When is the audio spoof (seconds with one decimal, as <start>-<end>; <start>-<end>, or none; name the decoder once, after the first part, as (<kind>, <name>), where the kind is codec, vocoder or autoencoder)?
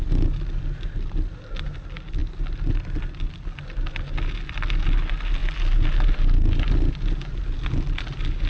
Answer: none